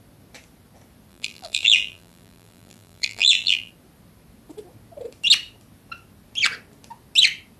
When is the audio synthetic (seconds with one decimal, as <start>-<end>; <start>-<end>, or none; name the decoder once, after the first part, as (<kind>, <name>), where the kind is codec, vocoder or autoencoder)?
1.1-3.7 (vocoder, BigVGAN v2)